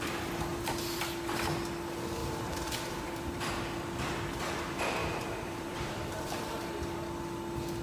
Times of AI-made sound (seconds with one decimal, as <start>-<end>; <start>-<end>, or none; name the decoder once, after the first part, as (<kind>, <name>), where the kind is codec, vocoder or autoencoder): 0.5-1.0 (vocoder, BigVGAN v2); 2.2-3.5; 5.0-6.5